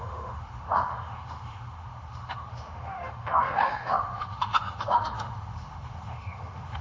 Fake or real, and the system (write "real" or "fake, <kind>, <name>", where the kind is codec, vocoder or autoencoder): fake, autoencoder, DAC-VAE